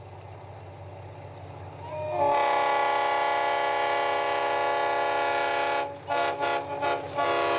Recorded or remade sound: recorded